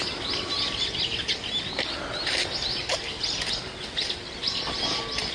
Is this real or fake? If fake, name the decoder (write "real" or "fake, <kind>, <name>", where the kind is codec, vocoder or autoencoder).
real